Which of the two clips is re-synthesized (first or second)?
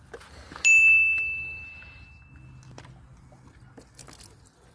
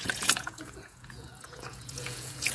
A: second